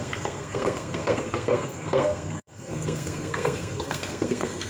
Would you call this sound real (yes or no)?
no